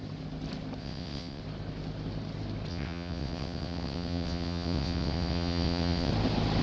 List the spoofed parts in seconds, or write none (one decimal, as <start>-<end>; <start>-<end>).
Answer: 0.8-1.4; 2.7-6.1